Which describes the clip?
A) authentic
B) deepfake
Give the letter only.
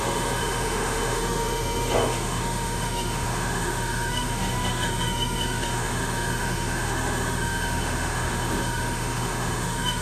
B